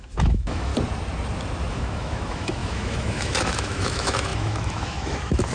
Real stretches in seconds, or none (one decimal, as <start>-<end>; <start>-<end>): 0.7-1.7